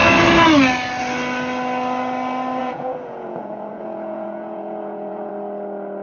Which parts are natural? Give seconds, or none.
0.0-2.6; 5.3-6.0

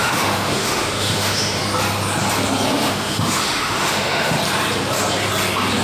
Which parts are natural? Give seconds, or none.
1.6-2.7; 4.4-5.8

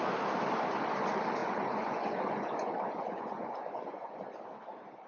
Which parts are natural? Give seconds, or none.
0.0-1.4; 4.2-5.1

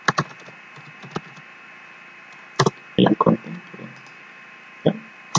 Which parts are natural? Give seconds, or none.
0.0-5.4